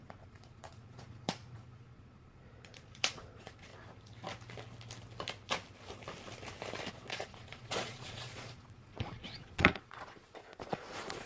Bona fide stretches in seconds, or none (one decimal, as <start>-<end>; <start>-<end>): 3.7-6.9